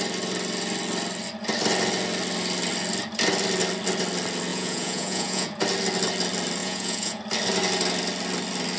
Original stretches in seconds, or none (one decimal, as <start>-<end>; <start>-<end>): 0.0-4.5; 5.6-6.6; 7.2-8.8